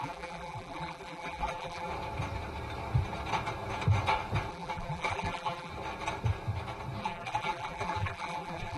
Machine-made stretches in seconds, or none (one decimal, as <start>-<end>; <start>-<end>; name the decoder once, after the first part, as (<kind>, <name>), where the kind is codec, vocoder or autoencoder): 0.0-1.9 (vocoder, BigVGAN v2); 4.5-5.7; 7.0-8.8